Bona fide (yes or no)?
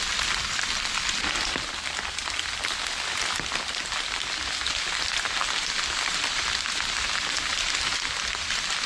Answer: yes